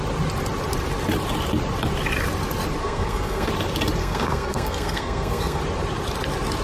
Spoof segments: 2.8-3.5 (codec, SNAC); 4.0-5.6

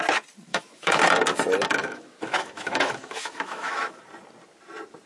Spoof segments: 0.5-1.0 (autoencoder, DAC-VAE); 1.8-4.0